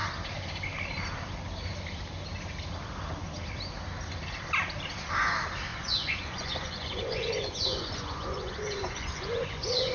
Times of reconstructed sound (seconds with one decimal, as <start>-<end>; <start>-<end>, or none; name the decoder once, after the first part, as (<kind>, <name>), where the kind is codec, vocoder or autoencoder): 5.7-9.9 (vocoder, Vocos)